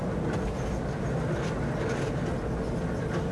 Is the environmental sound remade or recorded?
recorded